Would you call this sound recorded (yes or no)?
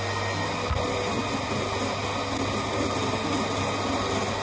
yes